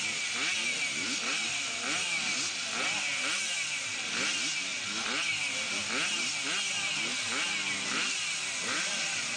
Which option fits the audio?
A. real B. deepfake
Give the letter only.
A